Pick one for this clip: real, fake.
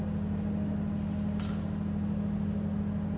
real